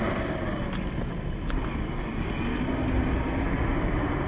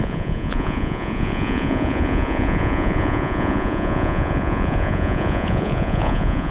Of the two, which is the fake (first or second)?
second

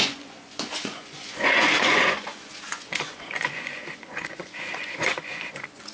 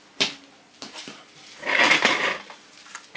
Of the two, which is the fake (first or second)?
first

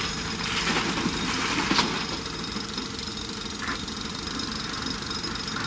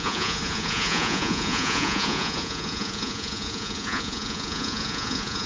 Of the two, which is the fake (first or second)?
second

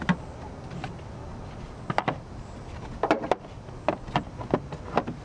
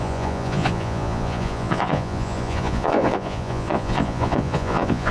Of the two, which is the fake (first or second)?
second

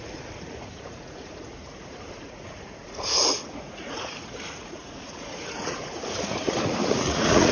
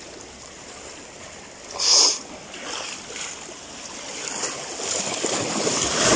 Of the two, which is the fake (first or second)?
first